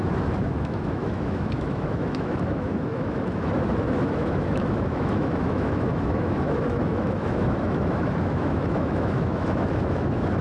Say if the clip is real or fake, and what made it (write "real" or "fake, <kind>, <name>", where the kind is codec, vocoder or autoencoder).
fake, autoencoder, DAC-VAE